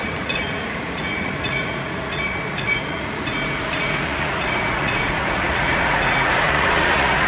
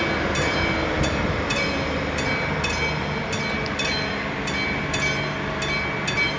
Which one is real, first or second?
second